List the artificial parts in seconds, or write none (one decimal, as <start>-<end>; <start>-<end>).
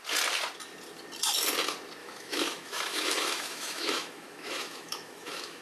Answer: 2.0-5.6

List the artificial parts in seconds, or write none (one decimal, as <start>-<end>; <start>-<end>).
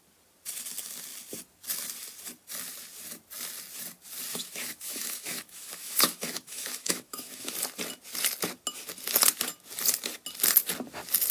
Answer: 4.3-7.5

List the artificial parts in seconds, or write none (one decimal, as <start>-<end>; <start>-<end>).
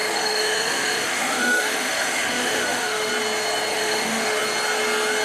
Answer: 0.0-3.1; 3.7-4.4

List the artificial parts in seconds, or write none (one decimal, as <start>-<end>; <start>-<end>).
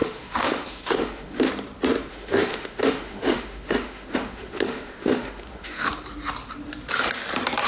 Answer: 0.0-1.5; 2.1-5.9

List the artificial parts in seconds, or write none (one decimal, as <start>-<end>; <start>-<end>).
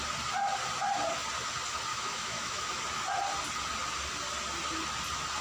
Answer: 1.9-2.8